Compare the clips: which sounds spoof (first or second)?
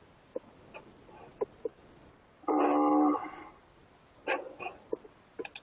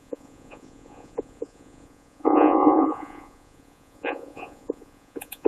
second